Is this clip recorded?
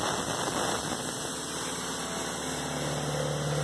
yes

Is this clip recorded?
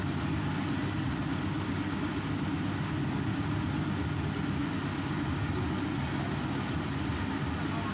yes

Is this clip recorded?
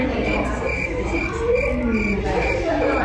yes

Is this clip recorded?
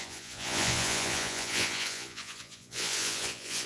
no